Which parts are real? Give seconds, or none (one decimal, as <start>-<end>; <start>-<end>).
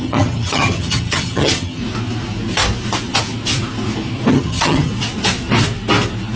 1.8-4.3; 4.9-6.4